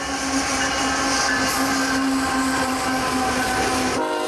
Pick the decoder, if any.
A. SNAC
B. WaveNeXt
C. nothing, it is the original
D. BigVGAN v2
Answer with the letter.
C